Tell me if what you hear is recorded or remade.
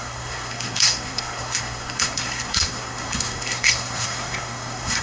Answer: remade